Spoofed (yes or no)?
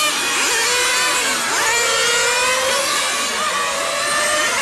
no